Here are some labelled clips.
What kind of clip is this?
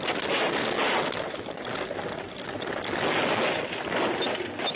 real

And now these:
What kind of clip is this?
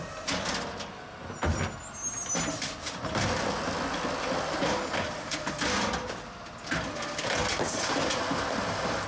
real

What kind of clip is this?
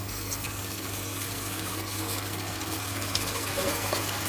fake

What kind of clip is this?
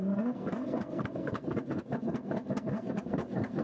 fake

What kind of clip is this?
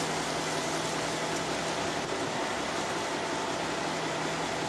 real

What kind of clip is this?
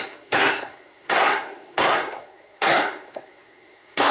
fake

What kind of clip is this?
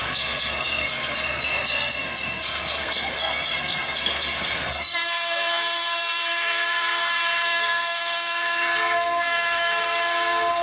fake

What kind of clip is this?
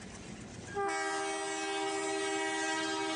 real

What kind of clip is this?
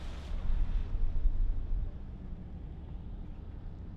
real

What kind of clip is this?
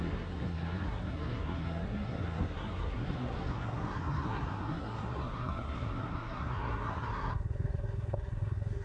fake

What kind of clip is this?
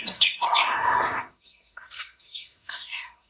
fake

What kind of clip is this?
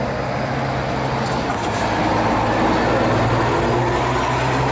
real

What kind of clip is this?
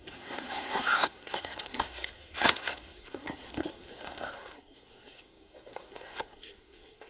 fake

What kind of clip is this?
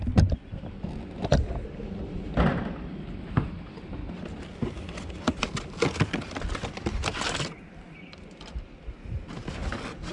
real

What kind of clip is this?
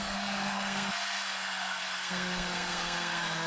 fake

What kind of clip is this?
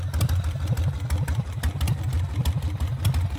real